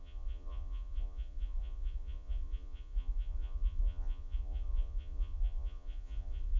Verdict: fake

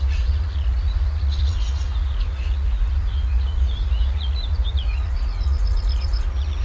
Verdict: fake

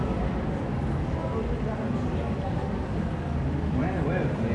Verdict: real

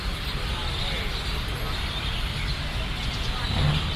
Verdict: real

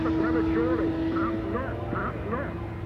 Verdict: real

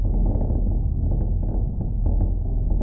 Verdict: fake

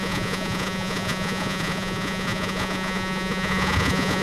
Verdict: fake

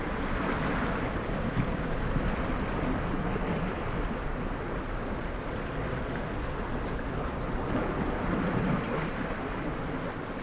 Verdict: real